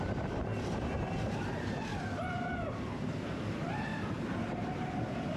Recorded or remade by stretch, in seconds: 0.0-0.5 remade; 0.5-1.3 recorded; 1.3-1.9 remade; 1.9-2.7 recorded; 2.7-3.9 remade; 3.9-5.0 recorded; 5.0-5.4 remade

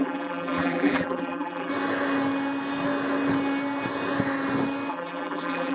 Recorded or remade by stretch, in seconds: 0.0-1.7 remade; 1.7-4.9 recorded; 4.9-5.7 remade

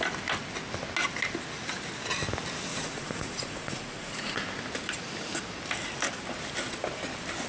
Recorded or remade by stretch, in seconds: 0.0-2.7 recorded; 2.7-4.4 remade; 4.4-7.5 recorded

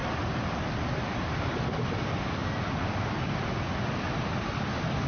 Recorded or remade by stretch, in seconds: 0.0-5.1 recorded

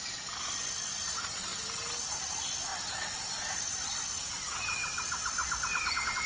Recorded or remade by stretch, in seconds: 0.0-1.5 recorded; 1.5-2.3 remade; 2.3-2.7 recorded; 2.7-3.3 remade; 3.3-6.3 recorded

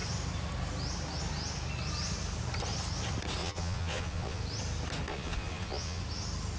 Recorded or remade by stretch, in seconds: 0.0-3.4 recorded; 3.4-4.4 remade; 4.4-5.1 recorded; 5.1-6.0 remade; 6.0-6.6 recorded

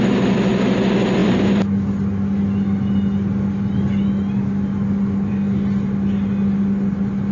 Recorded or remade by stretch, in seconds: 0.0-7.3 recorded